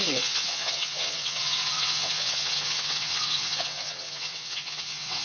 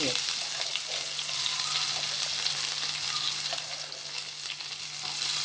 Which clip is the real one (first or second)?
second